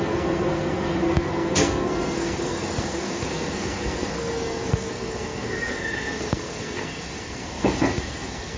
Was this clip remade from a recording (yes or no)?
yes